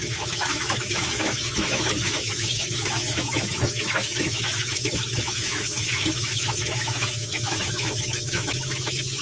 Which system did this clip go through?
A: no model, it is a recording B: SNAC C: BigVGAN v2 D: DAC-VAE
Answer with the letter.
D